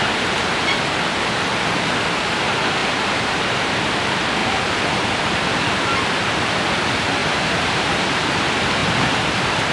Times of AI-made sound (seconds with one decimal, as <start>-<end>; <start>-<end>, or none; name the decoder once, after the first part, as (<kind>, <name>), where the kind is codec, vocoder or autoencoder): 2.8-3.4 (vocoder, BigVGAN v2); 4.4-5.2; 7.2-8.3

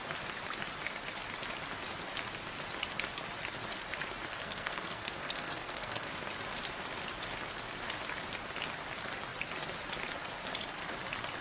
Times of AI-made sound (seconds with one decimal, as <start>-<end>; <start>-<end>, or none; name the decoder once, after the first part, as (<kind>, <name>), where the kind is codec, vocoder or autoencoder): 4.4-6.1 (codec, SNAC)

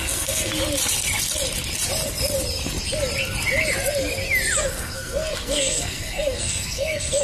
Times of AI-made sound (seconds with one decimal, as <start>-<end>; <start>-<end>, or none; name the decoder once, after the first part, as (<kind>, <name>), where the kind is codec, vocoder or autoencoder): 0.0-0.5 (codec, SNAC); 4.6-7.2

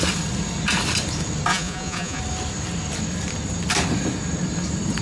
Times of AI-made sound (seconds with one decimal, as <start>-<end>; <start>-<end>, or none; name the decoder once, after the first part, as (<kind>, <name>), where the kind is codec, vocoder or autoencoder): 1.5-2.2 (vocoder, Vocos)

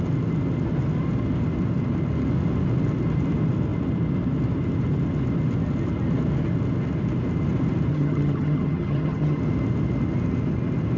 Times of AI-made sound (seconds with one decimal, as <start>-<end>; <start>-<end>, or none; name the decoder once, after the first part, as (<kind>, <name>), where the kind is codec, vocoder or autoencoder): 7.9-9.4 (vocoder, HiFi-GAN)

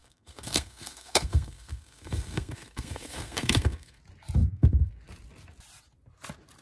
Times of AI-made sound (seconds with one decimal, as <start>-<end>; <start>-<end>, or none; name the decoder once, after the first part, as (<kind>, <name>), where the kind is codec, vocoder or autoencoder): 0.0-4.0 (codec, SNAC); 4.4-4.9

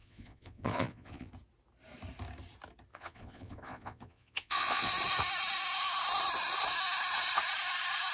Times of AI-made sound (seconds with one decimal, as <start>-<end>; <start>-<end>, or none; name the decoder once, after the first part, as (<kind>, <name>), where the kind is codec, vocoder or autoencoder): 0.0-1.3 (vocoder, Vocos); 2.9-4.9